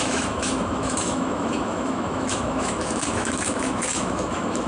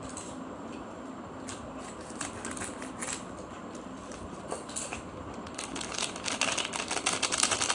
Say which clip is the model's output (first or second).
first